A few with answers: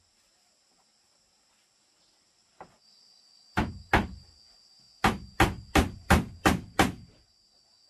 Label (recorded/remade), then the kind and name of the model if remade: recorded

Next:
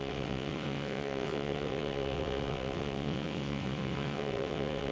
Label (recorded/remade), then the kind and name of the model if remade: remade, vocoder, WaveNeXt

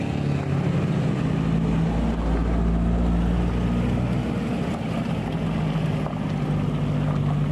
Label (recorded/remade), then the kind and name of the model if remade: recorded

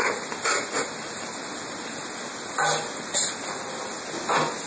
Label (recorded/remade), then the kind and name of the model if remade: recorded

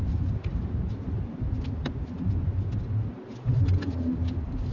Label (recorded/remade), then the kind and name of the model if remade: recorded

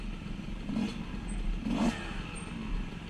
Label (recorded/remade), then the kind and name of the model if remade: recorded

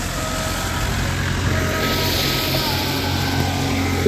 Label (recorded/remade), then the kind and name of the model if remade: recorded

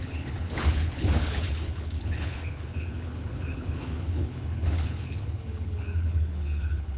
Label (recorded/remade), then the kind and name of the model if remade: remade, codec, HILCodec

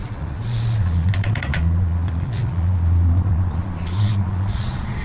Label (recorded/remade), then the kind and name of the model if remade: remade, vocoder, Vocos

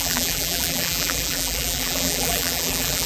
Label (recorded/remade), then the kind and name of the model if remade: remade, vocoder, BigVGAN v2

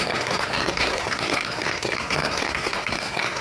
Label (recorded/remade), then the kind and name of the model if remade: remade, codec, SNAC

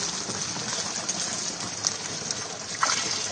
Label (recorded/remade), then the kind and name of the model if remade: recorded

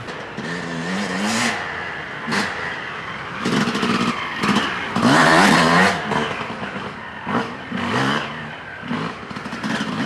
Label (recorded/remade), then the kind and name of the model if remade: recorded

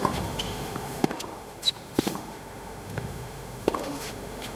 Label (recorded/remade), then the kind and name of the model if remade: remade, autoencoder, DAC-VAE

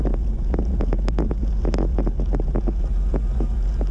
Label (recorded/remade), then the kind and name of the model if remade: recorded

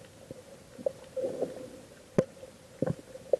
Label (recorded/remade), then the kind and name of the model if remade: recorded